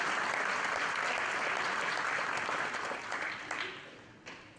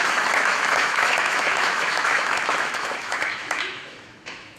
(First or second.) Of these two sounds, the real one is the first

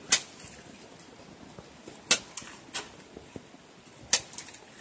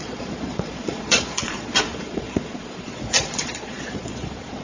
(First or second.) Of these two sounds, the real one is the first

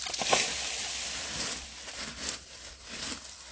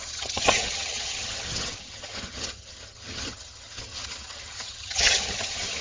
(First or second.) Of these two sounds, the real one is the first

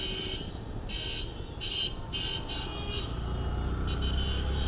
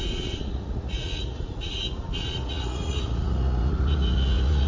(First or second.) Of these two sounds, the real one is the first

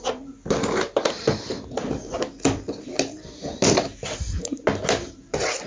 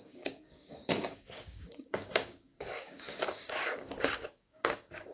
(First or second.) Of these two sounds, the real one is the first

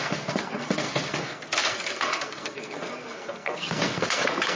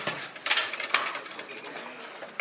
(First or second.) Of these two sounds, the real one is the second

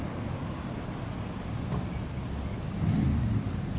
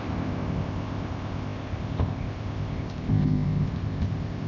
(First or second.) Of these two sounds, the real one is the first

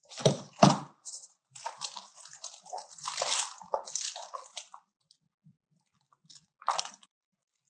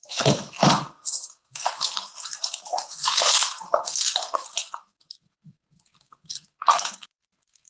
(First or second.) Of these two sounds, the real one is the first